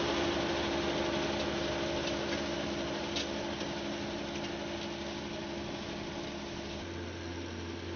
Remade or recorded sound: recorded